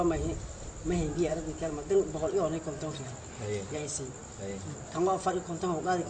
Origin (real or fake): real